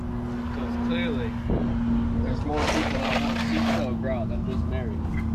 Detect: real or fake real